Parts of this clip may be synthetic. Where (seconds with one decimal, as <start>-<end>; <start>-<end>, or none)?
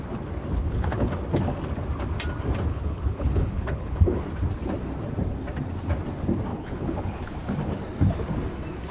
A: 0.6-1.1; 2.7-4.2; 6.5-7.2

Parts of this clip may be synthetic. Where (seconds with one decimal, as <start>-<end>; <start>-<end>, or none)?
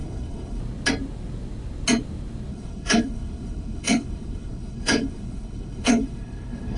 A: 0.0-0.6; 2.5-6.8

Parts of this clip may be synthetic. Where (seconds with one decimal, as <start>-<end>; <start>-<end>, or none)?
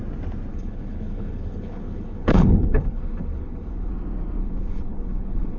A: 0.5-3.9; 4.4-5.6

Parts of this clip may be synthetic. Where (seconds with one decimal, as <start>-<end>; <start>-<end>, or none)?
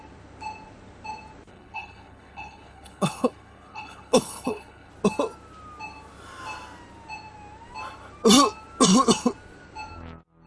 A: 1.5-4.9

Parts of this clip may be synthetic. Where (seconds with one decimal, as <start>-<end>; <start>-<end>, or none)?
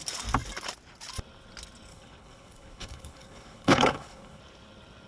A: 1.9-4.4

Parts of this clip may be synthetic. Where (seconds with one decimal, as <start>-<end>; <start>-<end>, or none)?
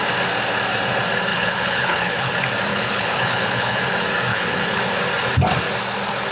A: 1.3-2.3; 2.7-3.8; 4.3-4.8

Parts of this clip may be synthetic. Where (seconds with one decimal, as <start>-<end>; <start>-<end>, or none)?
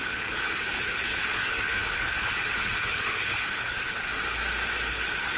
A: 0.0-4.1; 4.9-5.4